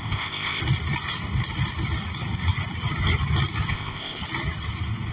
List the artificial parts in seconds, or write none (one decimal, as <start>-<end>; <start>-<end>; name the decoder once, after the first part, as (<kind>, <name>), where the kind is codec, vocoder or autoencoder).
0.0-0.6 (codec, ZipCodec); 3.7-4.2